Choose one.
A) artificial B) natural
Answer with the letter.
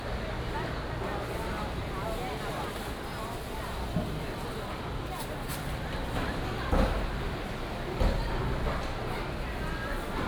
B